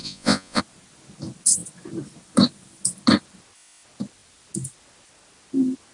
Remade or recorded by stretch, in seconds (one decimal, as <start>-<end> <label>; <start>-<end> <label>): 0.0-0.6 remade; 0.6-5.9 recorded